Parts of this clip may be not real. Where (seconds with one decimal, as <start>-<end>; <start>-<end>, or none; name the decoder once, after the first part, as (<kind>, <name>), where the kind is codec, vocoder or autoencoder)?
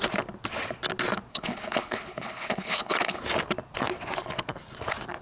1.3-3.2 (codec, HILCodec)